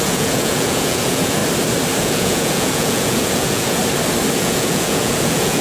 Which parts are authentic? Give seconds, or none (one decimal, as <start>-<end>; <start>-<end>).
1.4-2.0; 3.8-4.3